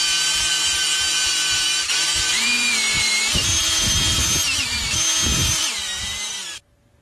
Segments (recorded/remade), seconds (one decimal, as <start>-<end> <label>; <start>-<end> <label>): 0.0-7.0 recorded